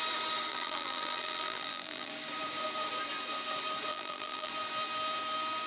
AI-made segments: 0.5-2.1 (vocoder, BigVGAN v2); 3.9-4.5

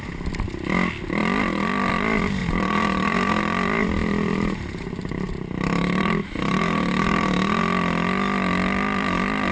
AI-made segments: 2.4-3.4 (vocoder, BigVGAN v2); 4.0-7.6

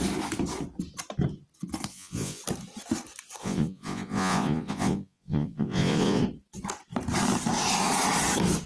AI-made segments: 1.9-2.4 (vocoder, Vocos); 3.4-6.2